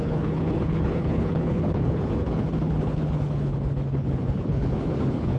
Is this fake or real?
fake